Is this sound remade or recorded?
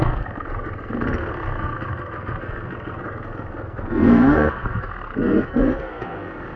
remade